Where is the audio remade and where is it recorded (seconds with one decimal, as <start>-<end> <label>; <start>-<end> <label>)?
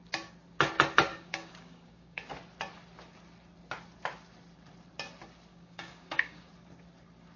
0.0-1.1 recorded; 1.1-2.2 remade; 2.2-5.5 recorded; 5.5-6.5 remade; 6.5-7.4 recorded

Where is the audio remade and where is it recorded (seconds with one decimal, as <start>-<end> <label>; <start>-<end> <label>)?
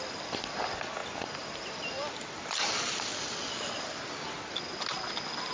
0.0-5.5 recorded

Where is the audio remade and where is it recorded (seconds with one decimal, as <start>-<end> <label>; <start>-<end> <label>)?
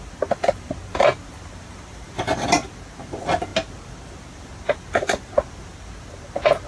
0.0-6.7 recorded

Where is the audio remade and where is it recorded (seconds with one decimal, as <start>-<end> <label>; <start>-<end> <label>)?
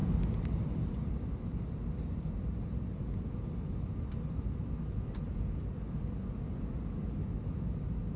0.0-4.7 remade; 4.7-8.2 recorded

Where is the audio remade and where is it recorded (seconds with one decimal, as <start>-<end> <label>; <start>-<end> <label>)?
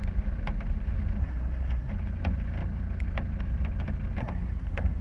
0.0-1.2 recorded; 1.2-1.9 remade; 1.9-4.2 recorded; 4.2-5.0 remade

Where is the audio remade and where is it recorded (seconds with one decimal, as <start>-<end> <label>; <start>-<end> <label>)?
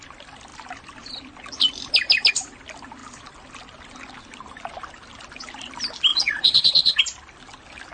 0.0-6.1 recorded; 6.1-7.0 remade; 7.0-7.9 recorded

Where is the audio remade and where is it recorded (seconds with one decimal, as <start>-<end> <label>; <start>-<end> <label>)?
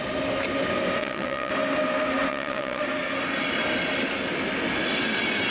0.0-1.0 recorded; 1.0-1.5 remade; 1.5-2.3 recorded; 2.3-2.8 remade; 2.8-5.5 recorded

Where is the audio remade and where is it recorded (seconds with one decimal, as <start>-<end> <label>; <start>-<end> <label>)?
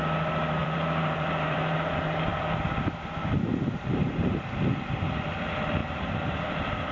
0.0-0.6 recorded; 0.6-4.5 remade; 4.5-5.8 recorded; 5.8-6.9 remade